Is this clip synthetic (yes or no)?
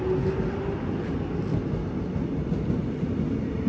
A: no